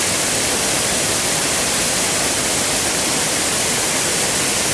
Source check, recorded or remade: recorded